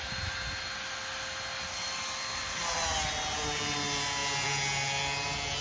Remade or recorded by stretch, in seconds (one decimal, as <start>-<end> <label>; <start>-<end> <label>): 0.0-5.6 recorded